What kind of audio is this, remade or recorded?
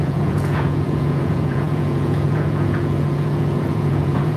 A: remade